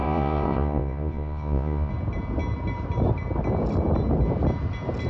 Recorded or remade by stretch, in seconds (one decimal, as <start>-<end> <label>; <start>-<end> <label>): 0.0-1.9 remade; 1.9-5.1 recorded